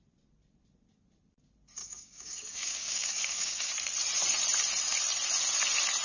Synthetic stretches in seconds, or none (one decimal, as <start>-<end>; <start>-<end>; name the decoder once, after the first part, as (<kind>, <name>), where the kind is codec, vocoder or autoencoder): 1.8-3.7 (codec, DAC)